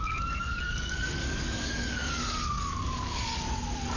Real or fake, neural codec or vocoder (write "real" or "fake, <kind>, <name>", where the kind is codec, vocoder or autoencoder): fake, codec, DAC